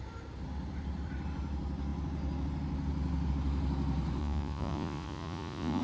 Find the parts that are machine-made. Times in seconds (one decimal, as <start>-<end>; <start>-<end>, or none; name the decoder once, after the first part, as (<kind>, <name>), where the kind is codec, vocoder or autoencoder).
4.2-5.8 (vocoder, Vocos)